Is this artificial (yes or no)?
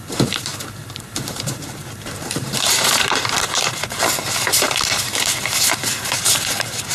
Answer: yes